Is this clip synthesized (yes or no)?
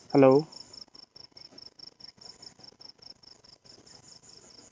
no